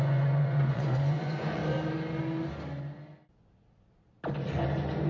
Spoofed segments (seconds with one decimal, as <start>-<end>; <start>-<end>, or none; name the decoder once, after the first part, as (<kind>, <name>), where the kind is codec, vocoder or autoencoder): 0.0-1.6 (vocoder, Vocos)